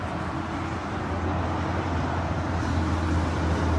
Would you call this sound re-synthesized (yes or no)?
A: no